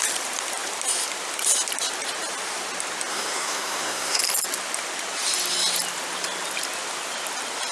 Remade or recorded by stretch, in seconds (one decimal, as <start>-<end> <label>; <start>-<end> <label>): 0.0-3.1 recorded; 3.1-4.2 remade; 4.2-7.7 recorded